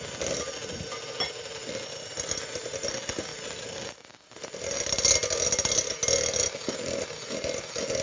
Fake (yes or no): no